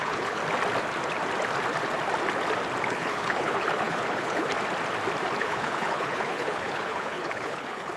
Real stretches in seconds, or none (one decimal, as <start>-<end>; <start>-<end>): 0.4-2.9; 4.5-5.4